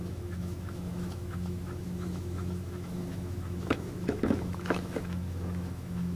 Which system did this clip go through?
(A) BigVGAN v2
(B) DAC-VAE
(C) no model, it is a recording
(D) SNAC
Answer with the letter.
B